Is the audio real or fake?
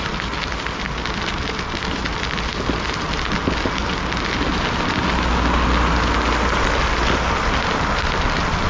real